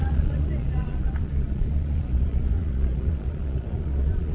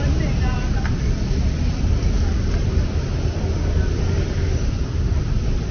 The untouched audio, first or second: second